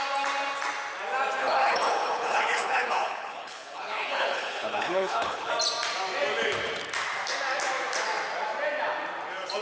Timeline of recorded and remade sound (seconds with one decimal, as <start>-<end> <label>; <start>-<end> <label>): 0.0-1.4 recorded; 1.4-5.5 remade; 5.5-9.6 recorded